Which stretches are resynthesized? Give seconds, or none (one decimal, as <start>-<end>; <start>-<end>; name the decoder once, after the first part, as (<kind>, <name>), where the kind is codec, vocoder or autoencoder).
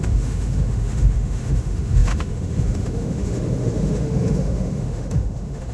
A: 0.0-5.7 (autoencoder, DAC-VAE)